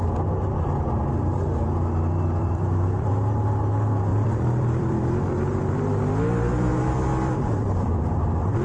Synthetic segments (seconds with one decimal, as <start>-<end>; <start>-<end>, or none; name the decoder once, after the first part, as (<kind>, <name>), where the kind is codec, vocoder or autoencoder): 2.4-3.1 (vocoder, BigVGAN v2); 4.1-6.0; 7.1-8.0